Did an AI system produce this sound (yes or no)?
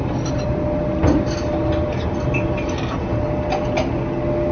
no